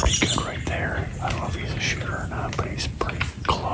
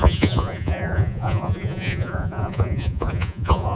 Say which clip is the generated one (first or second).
second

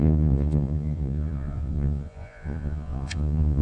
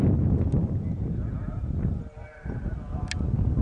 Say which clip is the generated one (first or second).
first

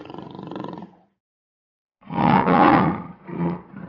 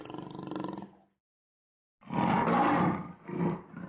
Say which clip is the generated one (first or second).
first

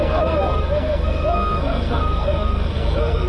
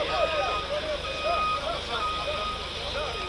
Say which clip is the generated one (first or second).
first